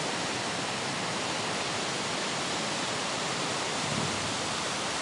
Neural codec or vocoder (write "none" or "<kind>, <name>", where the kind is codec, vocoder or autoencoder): none